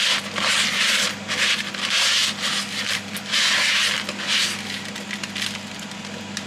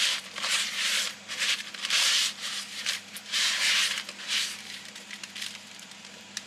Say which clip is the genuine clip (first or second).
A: first